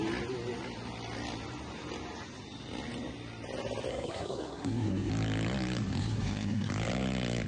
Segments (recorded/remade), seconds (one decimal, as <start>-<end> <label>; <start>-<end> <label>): 0.0-3.9 recorded; 3.9-5.1 remade; 5.1-6.0 recorded; 6.0-6.7 remade; 6.7-7.5 recorded